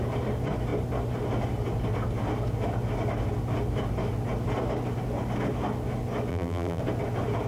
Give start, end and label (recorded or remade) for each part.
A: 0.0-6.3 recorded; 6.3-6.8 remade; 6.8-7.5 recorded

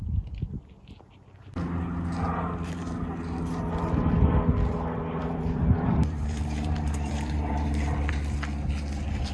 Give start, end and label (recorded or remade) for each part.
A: 0.0-5.2 recorded; 5.2-7.7 remade; 7.7-9.3 recorded

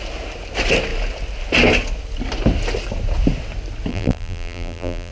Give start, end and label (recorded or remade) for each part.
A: 0.0-3.9 recorded; 3.9-5.1 remade

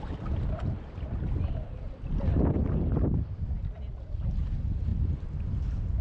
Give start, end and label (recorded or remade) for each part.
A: 0.0-6.0 recorded